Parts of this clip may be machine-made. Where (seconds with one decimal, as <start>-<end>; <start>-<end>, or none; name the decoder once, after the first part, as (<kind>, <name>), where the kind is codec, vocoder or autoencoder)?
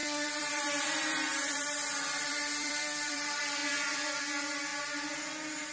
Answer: 0.0-4.7 (vocoder, BigVGAN v2)